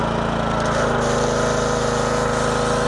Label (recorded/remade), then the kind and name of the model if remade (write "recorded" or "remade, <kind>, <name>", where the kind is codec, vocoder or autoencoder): recorded